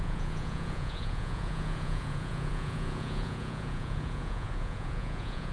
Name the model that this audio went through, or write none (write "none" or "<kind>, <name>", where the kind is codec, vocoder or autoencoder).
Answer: vocoder, Vocos